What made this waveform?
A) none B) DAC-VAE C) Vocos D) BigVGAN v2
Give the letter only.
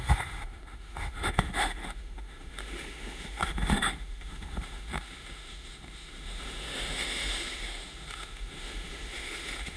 B